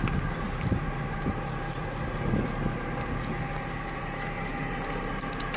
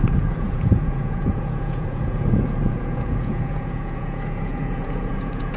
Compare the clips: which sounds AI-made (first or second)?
second